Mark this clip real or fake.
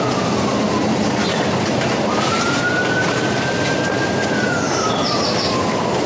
real